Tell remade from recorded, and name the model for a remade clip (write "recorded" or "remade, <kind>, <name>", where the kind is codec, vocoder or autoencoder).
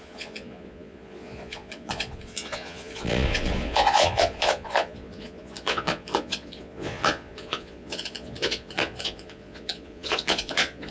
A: remade, vocoder, Vocos